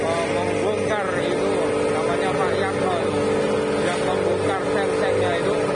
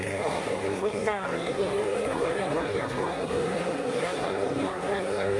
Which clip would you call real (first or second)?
first